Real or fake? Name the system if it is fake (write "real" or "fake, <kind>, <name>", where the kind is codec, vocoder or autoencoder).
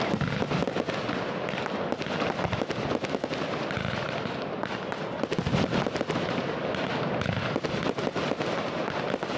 real